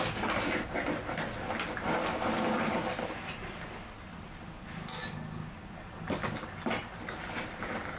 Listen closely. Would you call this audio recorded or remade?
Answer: recorded